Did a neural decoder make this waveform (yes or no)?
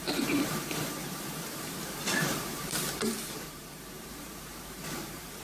yes